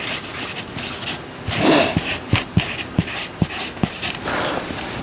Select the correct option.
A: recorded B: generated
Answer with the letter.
A